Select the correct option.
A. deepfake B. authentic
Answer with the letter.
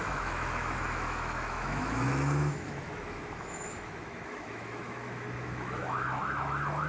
A